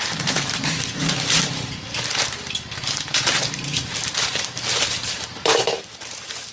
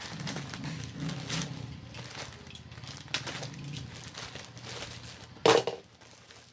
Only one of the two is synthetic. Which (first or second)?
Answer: first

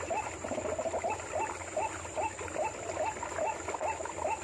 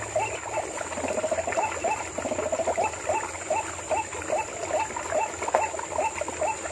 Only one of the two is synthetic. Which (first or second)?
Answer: second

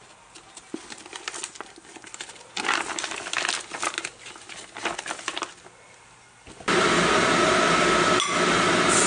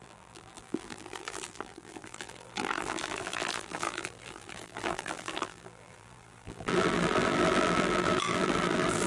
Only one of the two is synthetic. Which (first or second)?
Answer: second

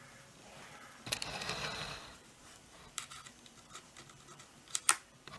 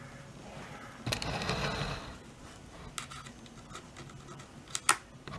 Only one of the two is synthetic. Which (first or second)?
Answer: first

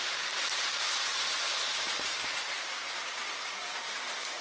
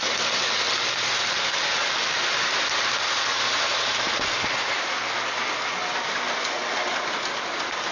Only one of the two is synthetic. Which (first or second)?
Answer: first